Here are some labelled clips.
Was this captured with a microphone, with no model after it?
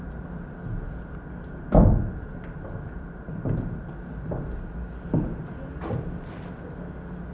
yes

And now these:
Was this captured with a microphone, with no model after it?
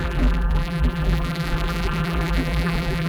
no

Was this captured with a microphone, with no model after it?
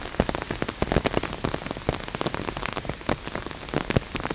yes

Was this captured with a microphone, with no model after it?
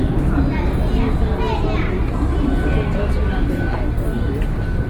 yes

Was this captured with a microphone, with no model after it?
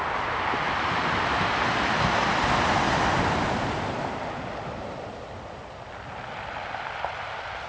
yes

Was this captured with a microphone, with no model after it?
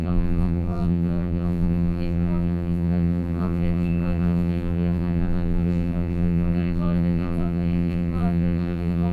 no